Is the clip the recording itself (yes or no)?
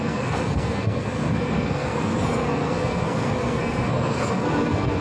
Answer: no